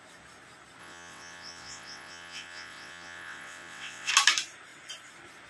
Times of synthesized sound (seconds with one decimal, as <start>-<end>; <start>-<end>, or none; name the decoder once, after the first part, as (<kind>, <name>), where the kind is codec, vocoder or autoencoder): 0.8-4.1 (vocoder, WaveNeXt)